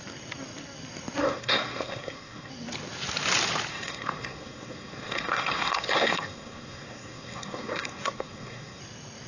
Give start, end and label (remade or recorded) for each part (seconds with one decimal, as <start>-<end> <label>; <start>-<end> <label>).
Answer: 0.0-1.2 recorded; 1.2-2.5 remade; 2.5-3.7 recorded; 3.7-8.8 remade; 8.8-9.3 recorded